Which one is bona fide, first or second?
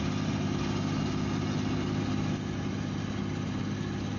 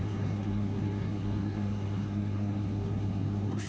first